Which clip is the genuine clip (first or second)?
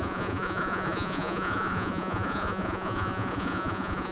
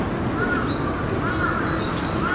second